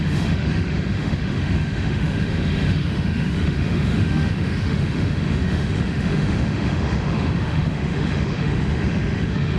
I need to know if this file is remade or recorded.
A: remade